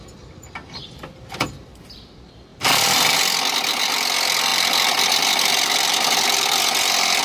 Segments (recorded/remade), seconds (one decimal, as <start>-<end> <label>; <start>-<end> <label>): 0.0-0.6 recorded; 0.6-2.0 remade; 2.0-2.5 recorded; 2.5-3.4 remade; 3.4-4.5 recorded; 4.5-7.2 remade